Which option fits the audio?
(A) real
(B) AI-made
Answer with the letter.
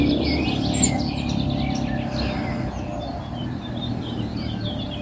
A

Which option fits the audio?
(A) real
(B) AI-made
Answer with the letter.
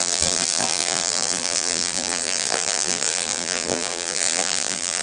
B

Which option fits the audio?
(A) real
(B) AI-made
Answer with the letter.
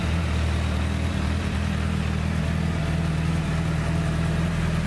A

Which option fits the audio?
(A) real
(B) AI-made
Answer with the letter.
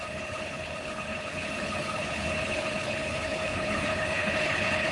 B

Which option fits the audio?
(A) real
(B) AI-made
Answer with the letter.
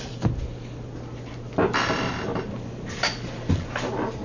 A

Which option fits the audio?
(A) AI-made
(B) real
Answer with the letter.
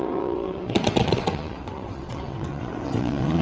A